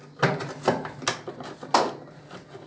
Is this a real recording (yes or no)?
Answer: yes